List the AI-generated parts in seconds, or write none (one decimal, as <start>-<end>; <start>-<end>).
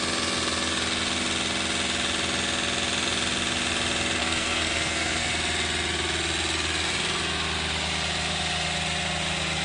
4.2-5.3